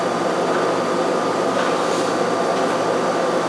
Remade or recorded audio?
recorded